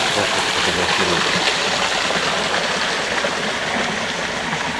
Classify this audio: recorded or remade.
recorded